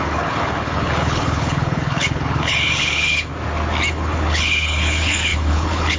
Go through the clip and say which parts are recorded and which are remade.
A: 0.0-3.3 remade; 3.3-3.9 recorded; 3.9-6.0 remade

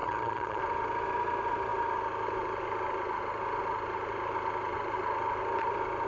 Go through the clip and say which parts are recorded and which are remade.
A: 0.0-0.6 remade; 0.6-6.1 recorded

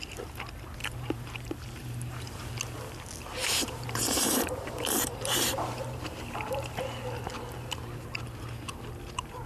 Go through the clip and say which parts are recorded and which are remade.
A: 0.0-0.8 recorded; 0.8-2.5 remade; 2.5-3.4 recorded; 3.4-6.8 remade; 6.8-9.5 recorded

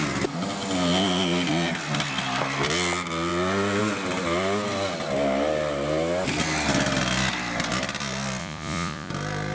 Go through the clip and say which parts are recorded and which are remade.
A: 0.0-8.4 recorded; 8.4-9.1 remade; 9.1-9.5 recorded